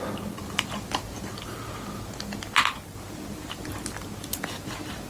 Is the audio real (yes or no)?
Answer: yes